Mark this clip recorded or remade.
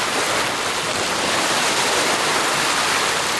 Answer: recorded